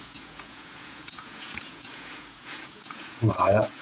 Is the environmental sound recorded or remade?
remade